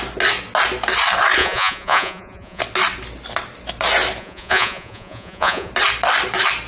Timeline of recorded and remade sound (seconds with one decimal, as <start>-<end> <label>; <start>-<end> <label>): 0.0-1.4 recorded; 1.4-2.6 remade; 2.6-4.2 recorded; 4.2-5.7 remade; 5.7-6.7 recorded